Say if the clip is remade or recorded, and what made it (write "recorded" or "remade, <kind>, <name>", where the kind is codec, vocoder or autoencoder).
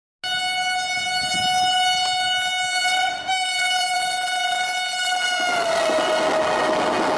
recorded